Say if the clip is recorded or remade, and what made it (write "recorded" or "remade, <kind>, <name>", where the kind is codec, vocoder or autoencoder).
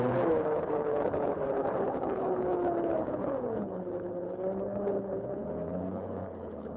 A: remade, codec, HILCodec